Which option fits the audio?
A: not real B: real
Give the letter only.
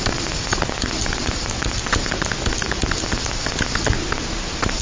B